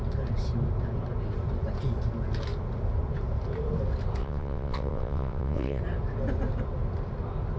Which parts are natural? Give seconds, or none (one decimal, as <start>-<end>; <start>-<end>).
0.0-4.2; 5.8-7.6

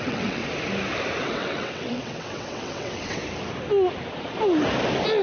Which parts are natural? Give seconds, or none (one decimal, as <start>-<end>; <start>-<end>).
0.4-1.2; 3.2-5.2

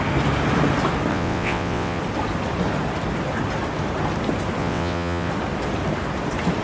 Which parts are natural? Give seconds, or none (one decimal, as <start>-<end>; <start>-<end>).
0.0-1.1; 2.0-4.6; 5.3-6.6

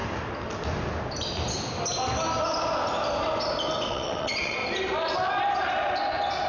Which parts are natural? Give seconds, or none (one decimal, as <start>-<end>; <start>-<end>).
0.0-3.9; 4.6-6.5